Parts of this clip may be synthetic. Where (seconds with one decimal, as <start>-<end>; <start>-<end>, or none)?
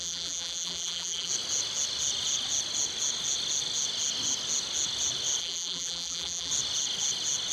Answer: 0.0-1.3; 5.4-6.5